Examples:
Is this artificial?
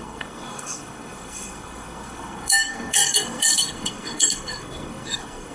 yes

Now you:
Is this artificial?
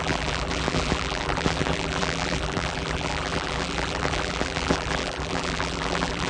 yes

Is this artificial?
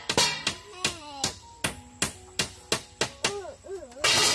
no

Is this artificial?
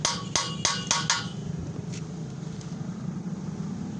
no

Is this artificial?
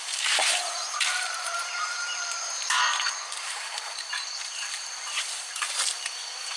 yes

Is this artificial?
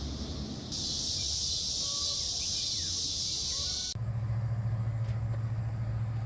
no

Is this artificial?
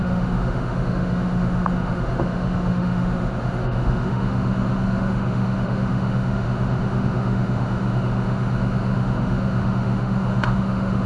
yes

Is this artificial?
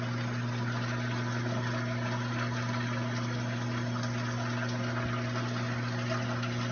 no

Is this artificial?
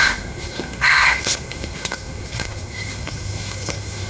yes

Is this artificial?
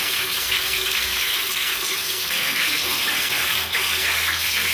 yes